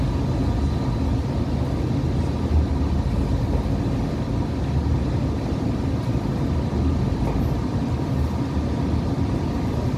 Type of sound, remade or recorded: recorded